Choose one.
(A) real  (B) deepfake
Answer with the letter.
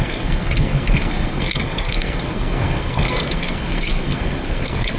B